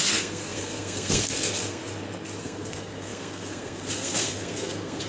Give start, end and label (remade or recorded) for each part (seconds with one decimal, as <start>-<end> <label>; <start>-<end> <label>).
0.0-1.8 remade; 1.8-2.4 recorded; 2.4-5.1 remade